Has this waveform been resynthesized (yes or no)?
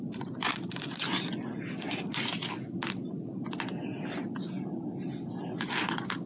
no